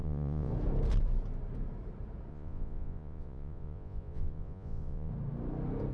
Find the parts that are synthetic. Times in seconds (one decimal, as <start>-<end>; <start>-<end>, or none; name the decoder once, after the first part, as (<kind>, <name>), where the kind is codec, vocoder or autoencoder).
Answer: 0.0-0.5 (vocoder, Vocos); 2.3-5.1